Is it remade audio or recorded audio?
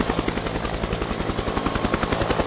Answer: recorded